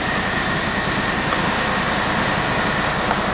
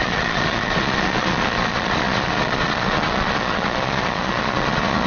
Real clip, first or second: first